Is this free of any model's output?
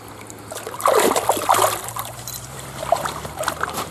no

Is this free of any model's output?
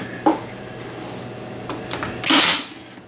yes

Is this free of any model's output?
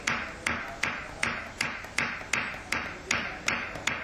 yes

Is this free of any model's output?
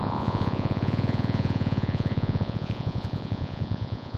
no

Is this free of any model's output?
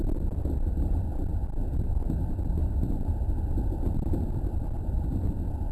no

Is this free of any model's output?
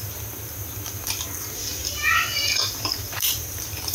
no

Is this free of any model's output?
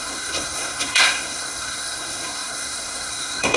no